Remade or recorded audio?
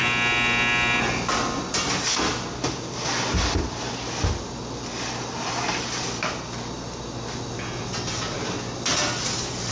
recorded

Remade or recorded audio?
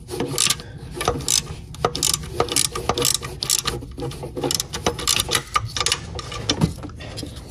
recorded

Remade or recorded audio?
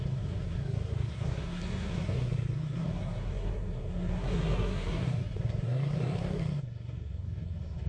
remade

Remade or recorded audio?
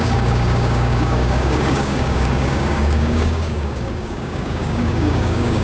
remade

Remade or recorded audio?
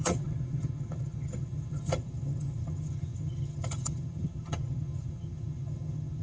remade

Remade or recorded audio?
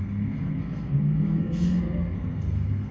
remade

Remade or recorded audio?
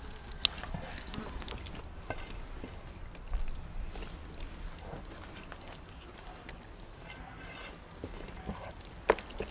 recorded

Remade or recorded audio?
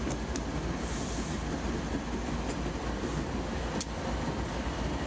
recorded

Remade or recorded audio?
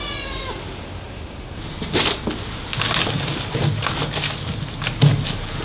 recorded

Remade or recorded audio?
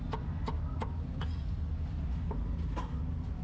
recorded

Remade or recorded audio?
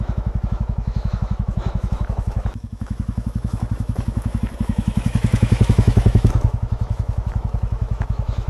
remade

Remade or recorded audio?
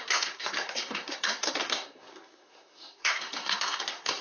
remade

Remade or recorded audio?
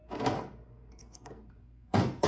remade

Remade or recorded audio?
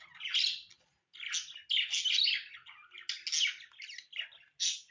recorded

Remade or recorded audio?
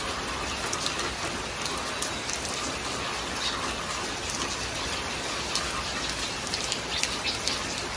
recorded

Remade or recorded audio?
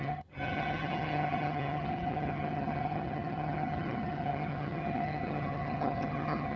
remade